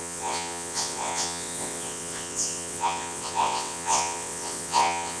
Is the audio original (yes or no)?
no